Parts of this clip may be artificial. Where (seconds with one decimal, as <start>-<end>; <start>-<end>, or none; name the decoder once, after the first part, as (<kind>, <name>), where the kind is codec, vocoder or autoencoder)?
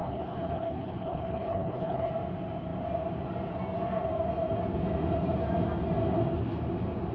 0.0-2.1 (codec, HILCodec)